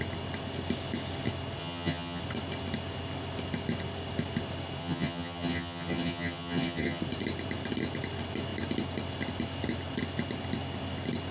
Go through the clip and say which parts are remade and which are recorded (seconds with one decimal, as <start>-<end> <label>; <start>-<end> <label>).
0.0-1.6 recorded; 1.6-2.2 remade; 2.2-4.8 recorded; 4.8-7.0 remade; 7.0-11.3 recorded